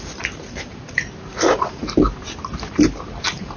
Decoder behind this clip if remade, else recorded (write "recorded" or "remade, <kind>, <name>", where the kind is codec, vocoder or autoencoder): remade, vocoder, BigVGAN v2